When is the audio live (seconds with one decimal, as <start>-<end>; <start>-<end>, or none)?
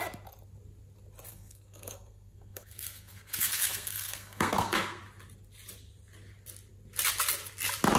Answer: 0.0-1.3; 5.0-8.0